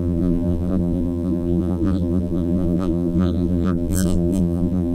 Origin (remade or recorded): remade